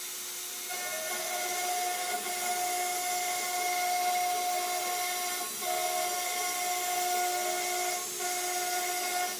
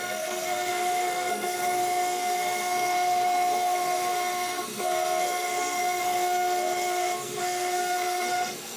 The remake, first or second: second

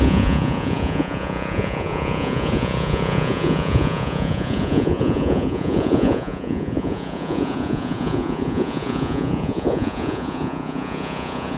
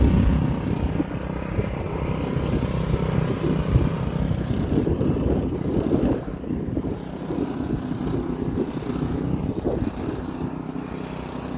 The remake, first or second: first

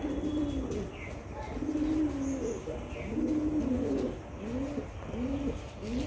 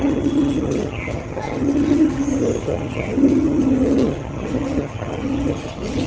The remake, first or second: second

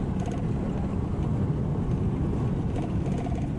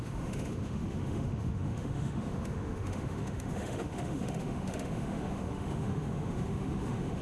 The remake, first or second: second